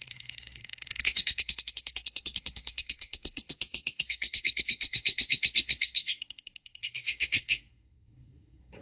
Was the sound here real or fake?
fake